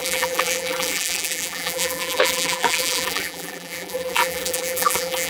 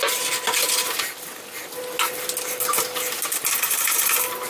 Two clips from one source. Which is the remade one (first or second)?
first